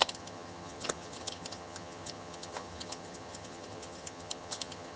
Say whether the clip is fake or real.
fake